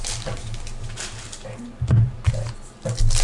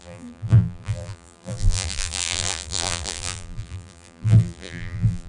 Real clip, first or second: first